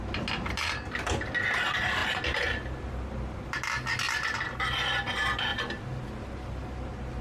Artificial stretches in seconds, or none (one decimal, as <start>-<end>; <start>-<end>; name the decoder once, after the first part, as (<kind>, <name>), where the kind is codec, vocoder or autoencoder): none